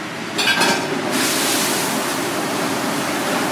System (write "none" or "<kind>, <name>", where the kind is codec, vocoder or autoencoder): none